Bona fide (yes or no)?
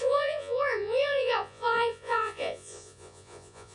no